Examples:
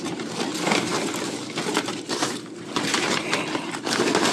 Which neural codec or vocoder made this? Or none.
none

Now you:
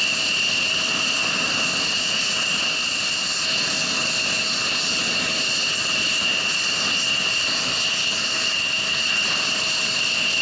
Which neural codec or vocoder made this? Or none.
none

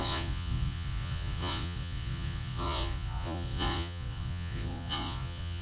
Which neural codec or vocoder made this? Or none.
vocoder, Vocos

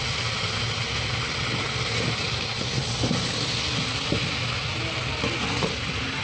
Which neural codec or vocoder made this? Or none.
none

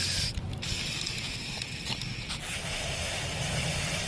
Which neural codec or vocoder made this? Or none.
none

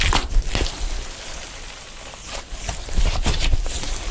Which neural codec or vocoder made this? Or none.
none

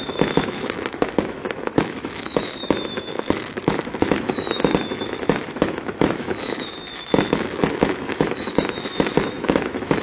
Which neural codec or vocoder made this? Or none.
autoencoder, DAC-VAE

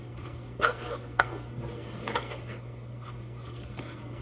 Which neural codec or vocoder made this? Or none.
codec, SNAC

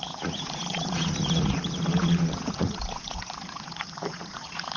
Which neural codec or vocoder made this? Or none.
vocoder, Vocos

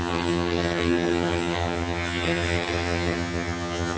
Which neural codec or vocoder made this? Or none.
vocoder, HiFi-GAN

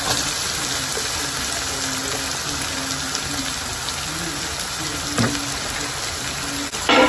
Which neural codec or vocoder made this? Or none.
none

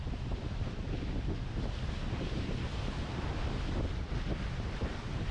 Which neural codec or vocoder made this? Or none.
vocoder, BigVGAN v2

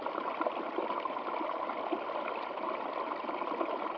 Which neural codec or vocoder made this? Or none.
none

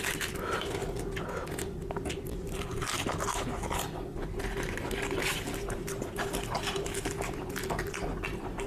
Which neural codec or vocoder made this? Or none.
none